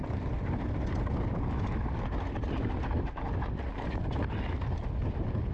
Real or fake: real